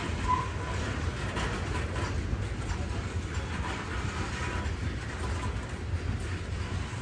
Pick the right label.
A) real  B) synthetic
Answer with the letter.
A